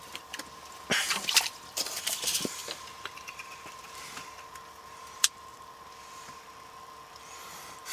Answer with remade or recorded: remade